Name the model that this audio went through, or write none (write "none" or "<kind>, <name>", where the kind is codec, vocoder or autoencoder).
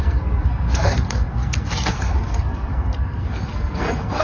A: codec, SNAC